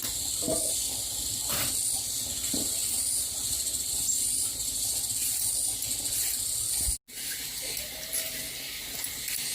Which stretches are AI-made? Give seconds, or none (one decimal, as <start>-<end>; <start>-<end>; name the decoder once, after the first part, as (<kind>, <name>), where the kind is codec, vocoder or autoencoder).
2.8-5.7 (vocoder, BigVGAN v2)